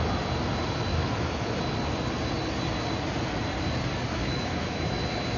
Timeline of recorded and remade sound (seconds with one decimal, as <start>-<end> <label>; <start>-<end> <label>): 0.0-0.9 recorded; 0.9-1.6 remade; 1.6-4.1 recorded; 4.1-4.9 remade; 4.9-5.4 recorded